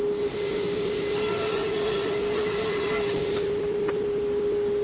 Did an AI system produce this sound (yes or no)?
no